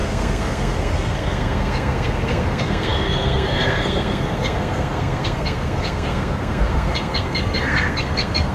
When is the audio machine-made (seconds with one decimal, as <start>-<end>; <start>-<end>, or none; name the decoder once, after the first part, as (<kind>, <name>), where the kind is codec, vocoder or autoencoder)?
0.0-8.5 (codec, SNAC)